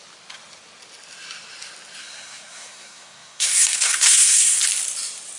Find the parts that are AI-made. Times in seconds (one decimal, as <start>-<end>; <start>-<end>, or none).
2.0-4.6

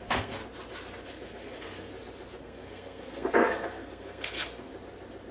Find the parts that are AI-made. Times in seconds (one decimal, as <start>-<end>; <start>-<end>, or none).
0.0-0.4; 1.0-1.9; 2.4-4.7

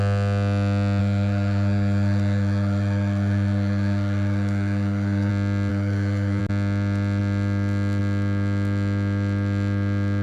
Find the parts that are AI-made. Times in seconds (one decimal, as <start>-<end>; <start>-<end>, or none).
1.0-5.3; 5.7-6.4

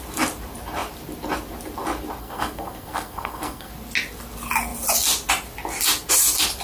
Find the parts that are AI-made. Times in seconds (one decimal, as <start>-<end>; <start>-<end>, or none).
2.2-3.7